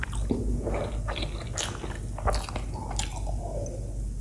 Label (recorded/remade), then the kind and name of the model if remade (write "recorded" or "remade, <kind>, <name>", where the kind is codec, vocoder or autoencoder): recorded